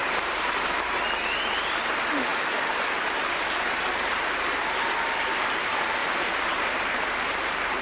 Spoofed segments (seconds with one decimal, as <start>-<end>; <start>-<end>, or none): 0.0-0.8; 6.0-7.8